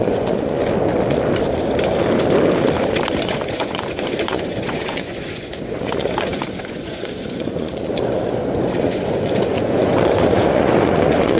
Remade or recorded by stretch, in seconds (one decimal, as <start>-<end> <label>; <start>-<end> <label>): 0.0-0.6 remade; 0.6-3.2 recorded; 3.2-11.4 remade